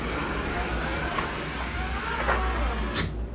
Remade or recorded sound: recorded